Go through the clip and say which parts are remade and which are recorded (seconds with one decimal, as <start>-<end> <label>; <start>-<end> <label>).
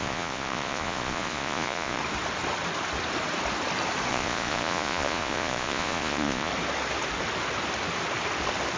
0.0-2.0 remade; 2.0-4.1 recorded; 4.1-6.5 remade; 6.5-8.8 recorded